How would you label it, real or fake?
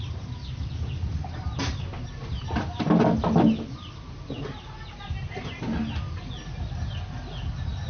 real